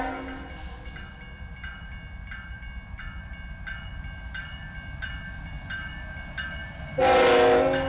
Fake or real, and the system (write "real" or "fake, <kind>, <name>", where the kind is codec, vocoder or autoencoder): real